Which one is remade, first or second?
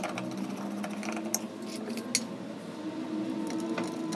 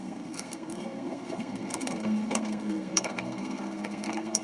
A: second